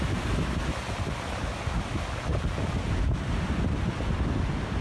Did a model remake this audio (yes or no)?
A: no